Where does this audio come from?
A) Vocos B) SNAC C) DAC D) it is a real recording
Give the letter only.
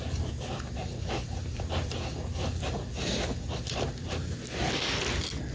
D